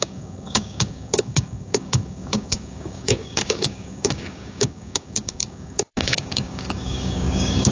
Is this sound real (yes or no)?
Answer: no